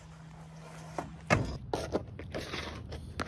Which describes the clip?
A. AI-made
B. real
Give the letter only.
B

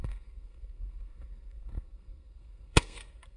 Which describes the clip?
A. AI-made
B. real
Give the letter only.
A